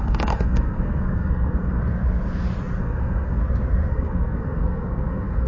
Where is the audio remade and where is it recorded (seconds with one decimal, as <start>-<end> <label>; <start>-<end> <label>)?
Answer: 0.0-1.8 remade; 1.8-2.8 recorded; 2.8-3.4 remade; 3.4-3.9 recorded; 3.9-5.5 remade